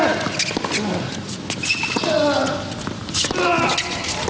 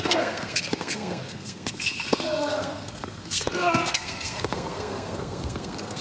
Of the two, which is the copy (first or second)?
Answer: second